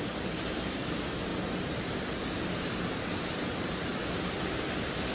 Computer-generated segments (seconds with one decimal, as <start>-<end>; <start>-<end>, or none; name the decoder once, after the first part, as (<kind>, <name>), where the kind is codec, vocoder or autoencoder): 0.0-1.3 (vocoder, BigVGAN v2); 2.5-3.9